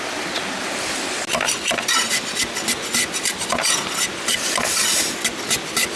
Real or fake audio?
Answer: real